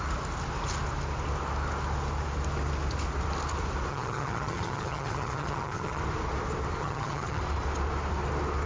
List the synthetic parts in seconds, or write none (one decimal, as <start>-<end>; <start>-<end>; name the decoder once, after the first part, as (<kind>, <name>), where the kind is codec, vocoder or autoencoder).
3.9-6.0 (vocoder, HiFi-GAN); 6.8-7.4